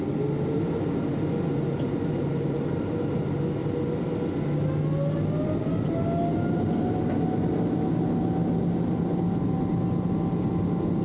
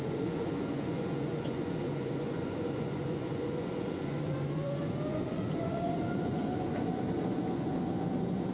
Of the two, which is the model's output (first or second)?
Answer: second